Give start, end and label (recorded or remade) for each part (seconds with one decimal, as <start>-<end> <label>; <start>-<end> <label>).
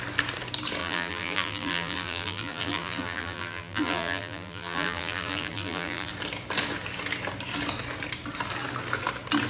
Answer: 0.0-0.8 recorded; 0.8-6.1 remade; 6.1-9.5 recorded